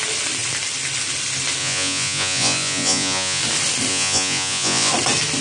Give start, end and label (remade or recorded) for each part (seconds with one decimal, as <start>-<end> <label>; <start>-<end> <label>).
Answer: 0.0-1.6 recorded; 1.6-3.4 remade; 3.4-3.9 recorded; 3.9-4.9 remade; 4.9-5.4 recorded